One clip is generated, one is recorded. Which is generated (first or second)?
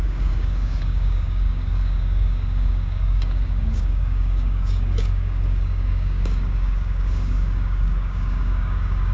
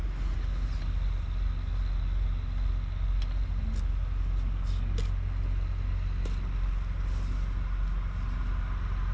first